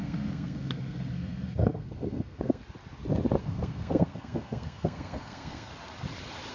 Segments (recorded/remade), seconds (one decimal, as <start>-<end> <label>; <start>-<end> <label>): 0.0-2.6 remade; 2.6-3.4 recorded; 3.4-5.7 remade; 5.7-6.5 recorded